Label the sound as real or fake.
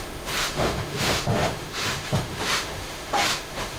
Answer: fake